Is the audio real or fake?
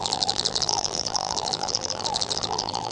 fake